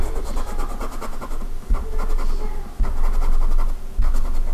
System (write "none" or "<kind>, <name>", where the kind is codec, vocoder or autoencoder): none